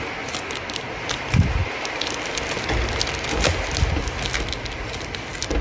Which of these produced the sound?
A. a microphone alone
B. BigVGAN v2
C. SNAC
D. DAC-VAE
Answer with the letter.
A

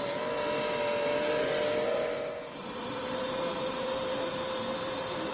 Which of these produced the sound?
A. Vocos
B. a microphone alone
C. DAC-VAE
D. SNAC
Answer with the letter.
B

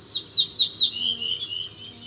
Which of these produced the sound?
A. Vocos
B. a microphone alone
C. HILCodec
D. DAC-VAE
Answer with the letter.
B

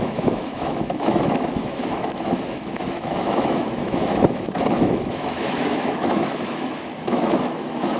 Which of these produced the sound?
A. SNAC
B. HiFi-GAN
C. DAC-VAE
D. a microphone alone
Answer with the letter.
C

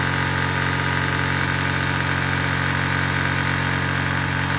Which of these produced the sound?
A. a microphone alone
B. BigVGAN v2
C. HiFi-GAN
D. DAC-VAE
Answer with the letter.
A